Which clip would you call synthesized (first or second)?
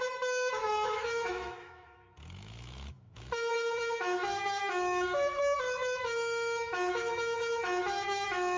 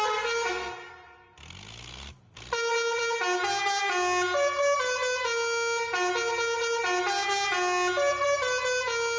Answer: first